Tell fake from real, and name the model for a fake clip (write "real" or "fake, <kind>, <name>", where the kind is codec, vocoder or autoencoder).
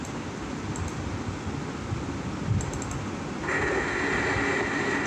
real